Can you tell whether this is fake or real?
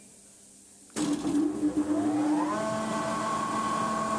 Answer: real